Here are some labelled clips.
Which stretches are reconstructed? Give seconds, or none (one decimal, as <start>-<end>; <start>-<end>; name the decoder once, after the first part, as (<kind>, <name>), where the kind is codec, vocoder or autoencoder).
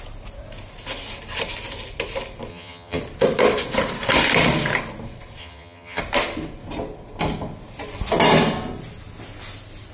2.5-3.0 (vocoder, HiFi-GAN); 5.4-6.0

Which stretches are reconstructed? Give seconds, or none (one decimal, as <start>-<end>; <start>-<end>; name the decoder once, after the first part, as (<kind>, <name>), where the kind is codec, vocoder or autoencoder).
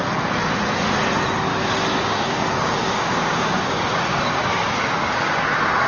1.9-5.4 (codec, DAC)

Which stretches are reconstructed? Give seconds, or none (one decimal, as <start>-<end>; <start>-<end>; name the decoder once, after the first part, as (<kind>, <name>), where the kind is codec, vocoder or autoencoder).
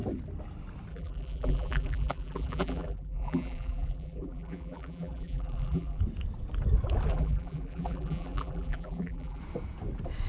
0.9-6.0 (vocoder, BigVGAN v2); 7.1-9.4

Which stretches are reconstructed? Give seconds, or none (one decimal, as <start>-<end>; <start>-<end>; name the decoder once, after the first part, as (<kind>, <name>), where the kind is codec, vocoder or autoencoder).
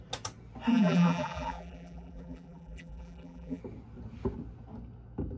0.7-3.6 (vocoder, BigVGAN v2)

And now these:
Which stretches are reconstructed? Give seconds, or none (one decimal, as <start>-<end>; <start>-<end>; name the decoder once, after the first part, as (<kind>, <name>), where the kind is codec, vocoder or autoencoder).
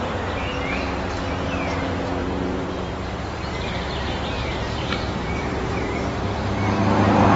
2.2-6.6 (vocoder, BigVGAN v2)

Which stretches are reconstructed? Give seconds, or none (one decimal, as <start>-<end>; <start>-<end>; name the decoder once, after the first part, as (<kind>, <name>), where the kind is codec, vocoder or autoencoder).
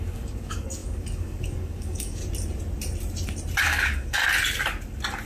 0.0-2.2 (codec, DAC); 3.6-4.2